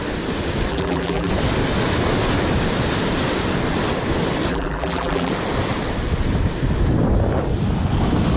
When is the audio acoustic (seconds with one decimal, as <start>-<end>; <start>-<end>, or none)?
0.0-0.7; 1.3-4.5; 5.3-8.4